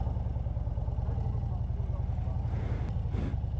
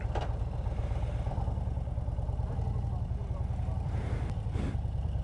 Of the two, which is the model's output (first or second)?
second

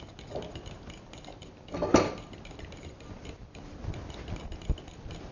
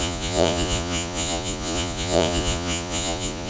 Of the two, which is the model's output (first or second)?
second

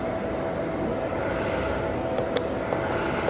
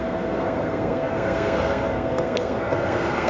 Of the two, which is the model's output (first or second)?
second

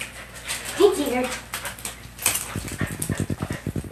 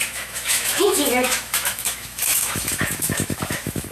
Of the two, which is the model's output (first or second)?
second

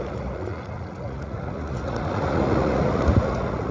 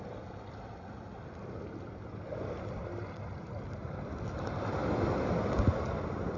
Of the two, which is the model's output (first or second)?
first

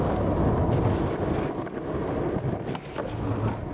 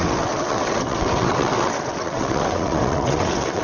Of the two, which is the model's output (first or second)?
second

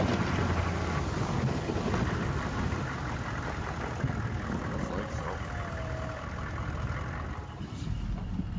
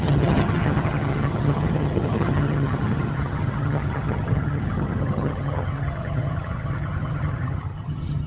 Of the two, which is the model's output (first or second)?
second